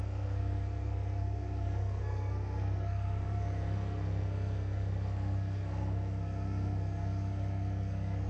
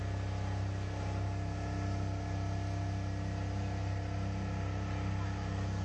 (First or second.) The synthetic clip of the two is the first